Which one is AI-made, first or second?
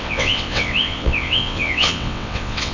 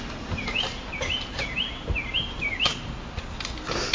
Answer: first